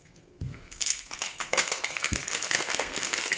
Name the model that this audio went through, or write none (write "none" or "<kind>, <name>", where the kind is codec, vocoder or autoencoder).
codec, SNAC